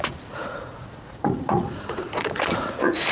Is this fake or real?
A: fake